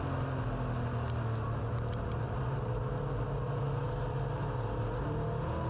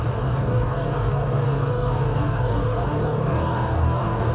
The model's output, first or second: second